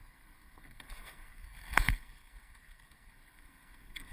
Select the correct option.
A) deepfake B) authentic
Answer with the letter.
A